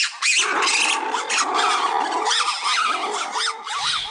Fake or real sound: real